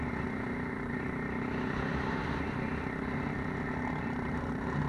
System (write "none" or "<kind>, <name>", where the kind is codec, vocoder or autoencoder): none